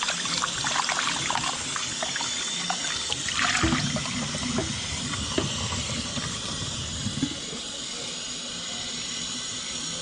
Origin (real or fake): real